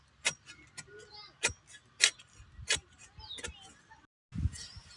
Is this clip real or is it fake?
real